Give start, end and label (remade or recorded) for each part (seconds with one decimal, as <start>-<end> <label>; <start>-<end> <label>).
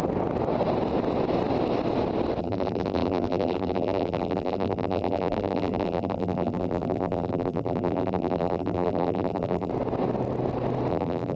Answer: 0.0-2.4 recorded; 2.4-9.7 remade; 9.7-10.9 recorded; 10.9-11.4 remade